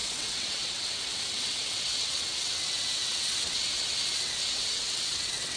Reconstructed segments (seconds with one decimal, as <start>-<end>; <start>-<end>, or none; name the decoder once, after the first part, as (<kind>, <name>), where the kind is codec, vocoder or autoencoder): 0.0-5.6 (vocoder, WaveNeXt)